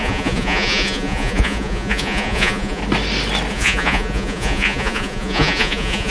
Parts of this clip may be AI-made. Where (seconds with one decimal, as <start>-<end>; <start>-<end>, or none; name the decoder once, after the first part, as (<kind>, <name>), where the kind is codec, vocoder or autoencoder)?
0.0-2.8 (vocoder, Vocos); 3.5-6.1